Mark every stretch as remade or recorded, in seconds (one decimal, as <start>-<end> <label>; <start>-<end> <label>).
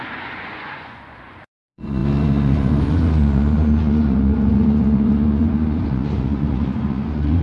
0.0-7.4 remade